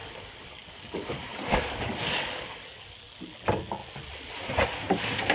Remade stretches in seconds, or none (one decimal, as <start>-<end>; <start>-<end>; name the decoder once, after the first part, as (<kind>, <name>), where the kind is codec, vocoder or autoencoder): 0.0-3.2 (codec, DAC)